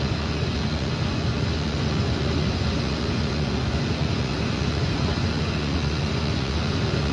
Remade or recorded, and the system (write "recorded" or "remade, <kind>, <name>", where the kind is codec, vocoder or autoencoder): remade, vocoder, Vocos